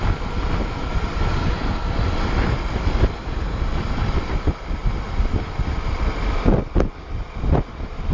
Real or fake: real